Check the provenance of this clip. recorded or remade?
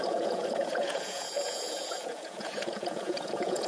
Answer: remade